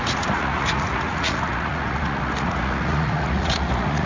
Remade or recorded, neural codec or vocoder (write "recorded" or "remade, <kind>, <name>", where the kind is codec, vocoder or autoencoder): remade, vocoder, Vocos